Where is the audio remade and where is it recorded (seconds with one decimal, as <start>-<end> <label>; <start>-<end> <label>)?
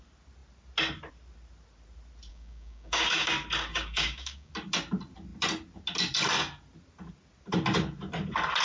0.0-2.3 recorded; 2.3-3.3 remade; 3.3-3.7 recorded; 3.7-4.5 remade; 4.5-8.6 recorded